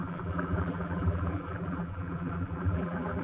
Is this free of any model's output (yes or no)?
no